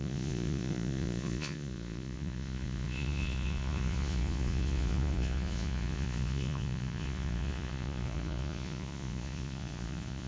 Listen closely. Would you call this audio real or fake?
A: fake